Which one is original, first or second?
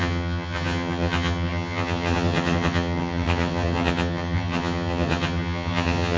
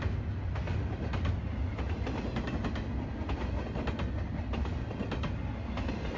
second